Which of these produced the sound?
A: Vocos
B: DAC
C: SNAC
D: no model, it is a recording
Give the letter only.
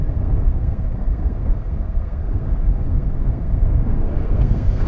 C